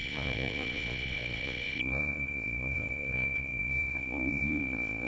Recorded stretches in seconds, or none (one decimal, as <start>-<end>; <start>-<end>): none